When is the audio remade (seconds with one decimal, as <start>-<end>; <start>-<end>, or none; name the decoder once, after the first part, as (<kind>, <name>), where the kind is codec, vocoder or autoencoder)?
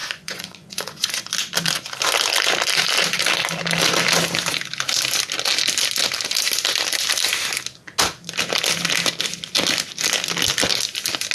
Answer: 0.0-1.3 (vocoder, Vocos)